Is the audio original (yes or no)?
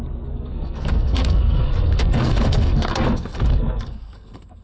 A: no